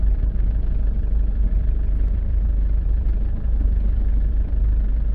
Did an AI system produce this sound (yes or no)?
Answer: yes